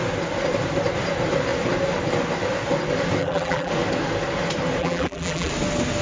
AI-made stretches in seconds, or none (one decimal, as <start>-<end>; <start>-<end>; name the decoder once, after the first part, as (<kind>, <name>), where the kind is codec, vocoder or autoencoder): 3.2-3.7 (vocoder, BigVGAN v2); 4.8-5.5